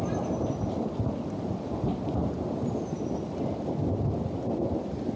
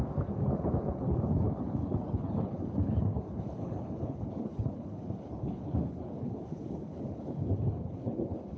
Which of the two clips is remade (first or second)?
second